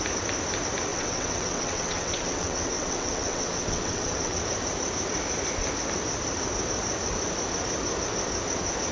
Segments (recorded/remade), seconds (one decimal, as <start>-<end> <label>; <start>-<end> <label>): 0.0-0.9 recorded; 0.9-4.4 remade; 4.4-8.9 recorded